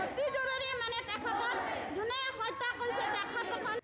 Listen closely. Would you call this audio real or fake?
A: real